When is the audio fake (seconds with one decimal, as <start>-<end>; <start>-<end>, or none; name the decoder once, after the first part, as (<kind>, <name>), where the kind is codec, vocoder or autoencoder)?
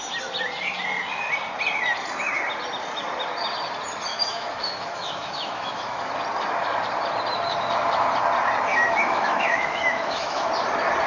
4.1-6.0 (autoencoder, DAC-VAE); 8.7-10.5